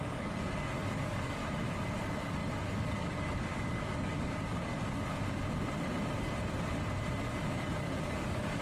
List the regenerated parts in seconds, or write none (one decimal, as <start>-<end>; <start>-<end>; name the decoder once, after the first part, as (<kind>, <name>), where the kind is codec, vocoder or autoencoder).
0.0-1.4 (codec, DAC); 2.0-4.7; 7.4-8.6